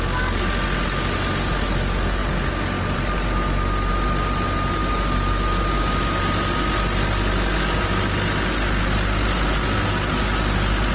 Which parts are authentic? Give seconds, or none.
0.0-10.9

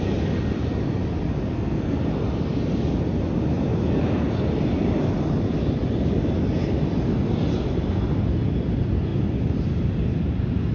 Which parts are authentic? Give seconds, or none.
0.0-1.5; 2.0-10.7